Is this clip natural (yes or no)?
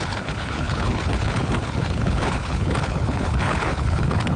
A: no